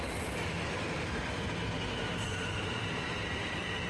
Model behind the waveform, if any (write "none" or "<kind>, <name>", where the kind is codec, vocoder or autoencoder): none